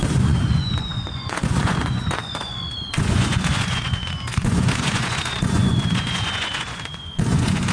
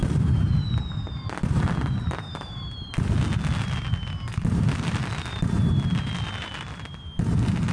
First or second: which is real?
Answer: second